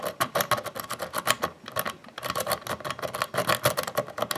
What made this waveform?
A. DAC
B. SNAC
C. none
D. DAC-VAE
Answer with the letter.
C